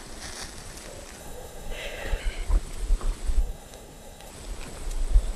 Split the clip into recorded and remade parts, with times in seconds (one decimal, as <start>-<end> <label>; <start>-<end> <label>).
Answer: 0.0-1.2 recorded; 1.2-2.2 remade; 2.2-3.4 recorded; 3.4-4.3 remade; 4.3-5.4 recorded